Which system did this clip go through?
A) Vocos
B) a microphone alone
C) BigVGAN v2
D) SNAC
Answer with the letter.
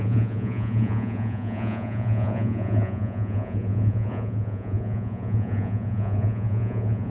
A